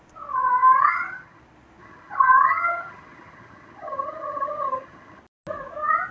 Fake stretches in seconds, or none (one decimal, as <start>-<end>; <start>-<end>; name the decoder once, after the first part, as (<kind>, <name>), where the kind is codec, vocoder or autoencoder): 0.6-1.4 (vocoder, HiFi-GAN); 1.8-5.2